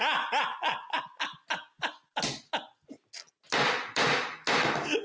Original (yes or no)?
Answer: yes